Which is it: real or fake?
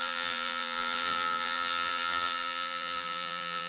fake